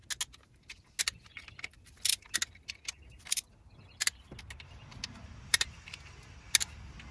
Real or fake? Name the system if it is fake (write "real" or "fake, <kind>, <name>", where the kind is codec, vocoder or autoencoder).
real